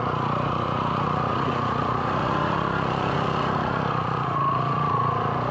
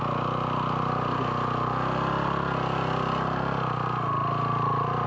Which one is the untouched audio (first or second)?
second